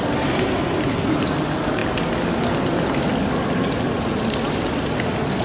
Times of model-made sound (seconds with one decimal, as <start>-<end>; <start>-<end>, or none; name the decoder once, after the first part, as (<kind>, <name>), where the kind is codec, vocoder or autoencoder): none